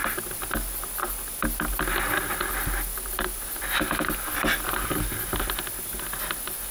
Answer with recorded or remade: recorded